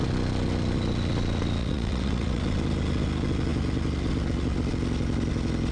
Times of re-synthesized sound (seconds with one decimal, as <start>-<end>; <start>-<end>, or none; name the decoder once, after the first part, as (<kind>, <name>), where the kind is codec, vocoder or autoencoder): 1.6-2.4 (vocoder, WaveNeXt)